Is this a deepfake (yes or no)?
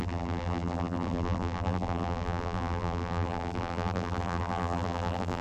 yes